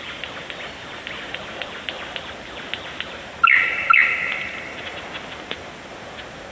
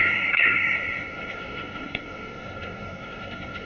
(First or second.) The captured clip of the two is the first